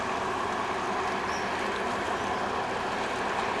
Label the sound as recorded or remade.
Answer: recorded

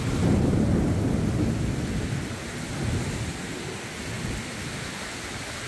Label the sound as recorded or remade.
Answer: recorded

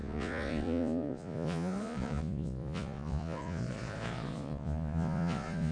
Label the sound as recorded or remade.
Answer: remade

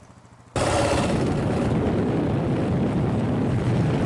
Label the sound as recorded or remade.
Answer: recorded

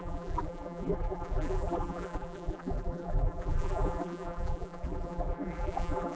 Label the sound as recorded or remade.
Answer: remade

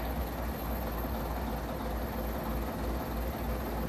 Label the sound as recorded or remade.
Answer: recorded